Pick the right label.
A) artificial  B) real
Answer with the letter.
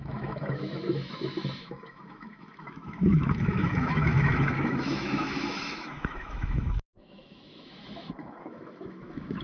A